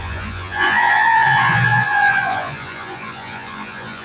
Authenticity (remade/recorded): remade